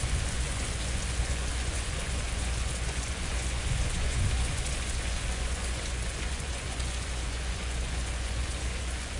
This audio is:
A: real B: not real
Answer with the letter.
B